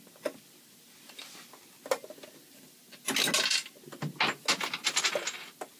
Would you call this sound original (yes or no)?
yes